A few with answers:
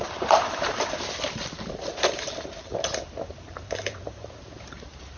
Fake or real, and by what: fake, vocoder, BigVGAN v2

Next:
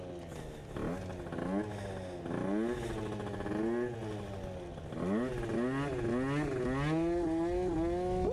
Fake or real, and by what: real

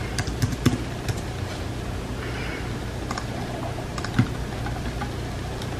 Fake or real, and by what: real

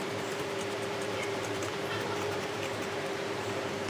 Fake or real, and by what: fake, vocoder, BigVGAN v2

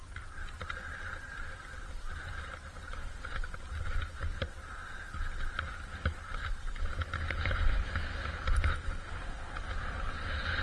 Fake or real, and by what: real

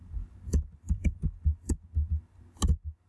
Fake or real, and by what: real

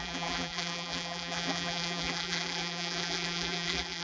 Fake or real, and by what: fake, vocoder, BigVGAN v2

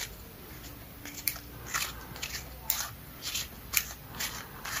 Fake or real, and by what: fake, vocoder, BigVGAN v2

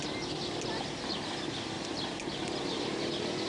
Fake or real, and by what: real